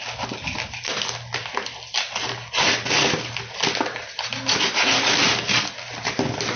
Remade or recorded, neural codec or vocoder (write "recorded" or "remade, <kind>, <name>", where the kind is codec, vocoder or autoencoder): recorded